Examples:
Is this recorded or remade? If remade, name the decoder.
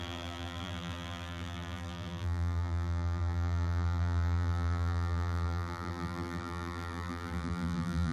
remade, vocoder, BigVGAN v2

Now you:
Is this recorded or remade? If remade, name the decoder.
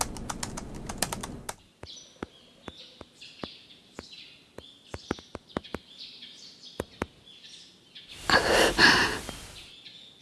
recorded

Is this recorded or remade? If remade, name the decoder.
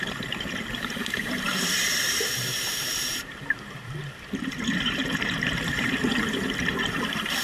remade, vocoder, BigVGAN v2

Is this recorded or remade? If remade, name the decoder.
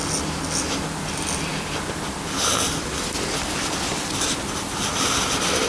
recorded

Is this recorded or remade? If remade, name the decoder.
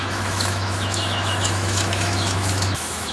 remade, autoencoder, DAC-VAE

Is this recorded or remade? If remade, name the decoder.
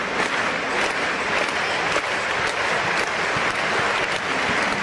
recorded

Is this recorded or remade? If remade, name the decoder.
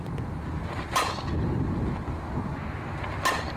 recorded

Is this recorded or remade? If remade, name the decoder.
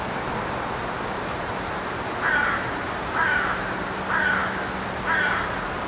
recorded